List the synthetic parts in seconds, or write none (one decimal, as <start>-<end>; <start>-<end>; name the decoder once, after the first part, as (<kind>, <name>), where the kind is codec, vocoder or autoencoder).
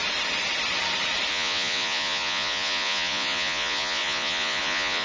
1.3-5.0 (vocoder, Vocos)